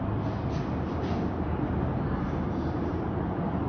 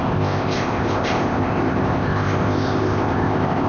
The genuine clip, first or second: first